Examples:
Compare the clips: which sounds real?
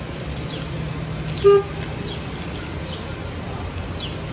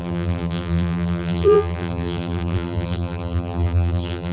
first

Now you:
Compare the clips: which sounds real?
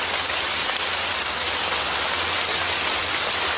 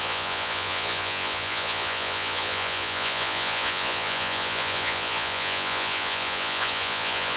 first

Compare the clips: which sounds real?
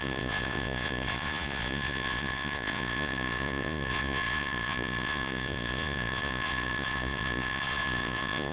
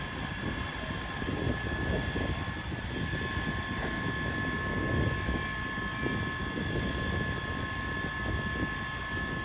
second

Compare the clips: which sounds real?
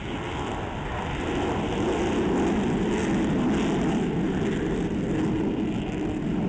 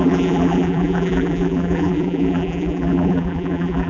first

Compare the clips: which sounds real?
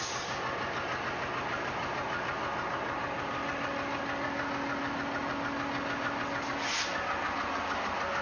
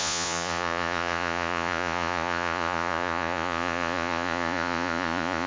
first